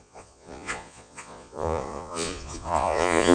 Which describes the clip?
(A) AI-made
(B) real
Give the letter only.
A